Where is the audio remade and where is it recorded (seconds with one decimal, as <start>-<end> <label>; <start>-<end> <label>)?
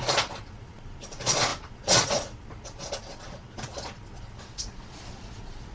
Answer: 0.0-5.7 remade